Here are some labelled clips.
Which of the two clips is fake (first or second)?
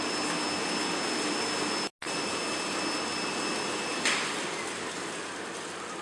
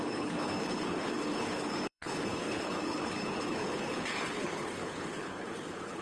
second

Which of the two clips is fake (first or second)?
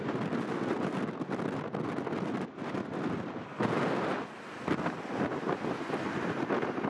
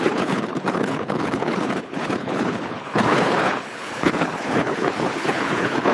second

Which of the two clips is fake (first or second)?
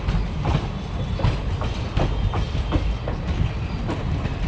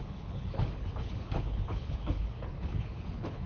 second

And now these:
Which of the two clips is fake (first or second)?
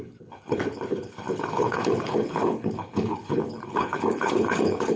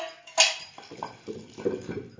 first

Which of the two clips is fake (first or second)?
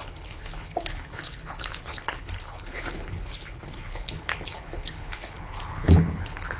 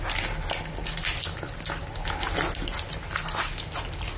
first